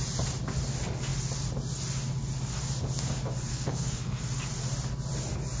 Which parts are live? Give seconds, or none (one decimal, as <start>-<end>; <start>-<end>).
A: 0.0-3.5; 4.2-5.6